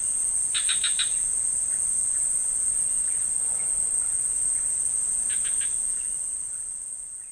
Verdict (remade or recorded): recorded